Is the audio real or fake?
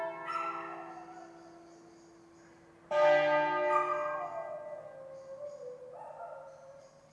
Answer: real